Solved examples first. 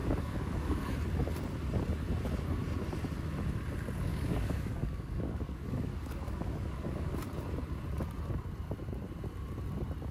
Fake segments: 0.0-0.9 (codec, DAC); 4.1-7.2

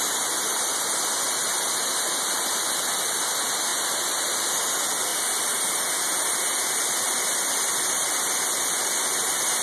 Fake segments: 1.5-2.9 (vocoder, BigVGAN v2); 5.1-7.7

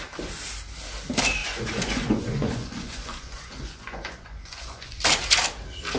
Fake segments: 1.4-5.0 (vocoder, Vocos)